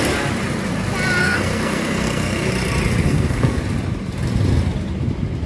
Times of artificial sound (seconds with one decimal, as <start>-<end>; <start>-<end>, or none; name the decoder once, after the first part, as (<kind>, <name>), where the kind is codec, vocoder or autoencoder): 1.2-2.5 (codec, SNAC); 3.0-3.6